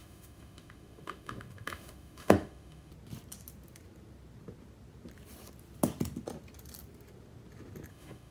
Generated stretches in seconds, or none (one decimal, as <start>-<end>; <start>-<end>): 0.0-2.9; 7.9-8.3